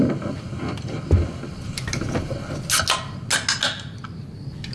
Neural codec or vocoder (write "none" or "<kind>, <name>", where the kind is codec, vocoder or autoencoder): none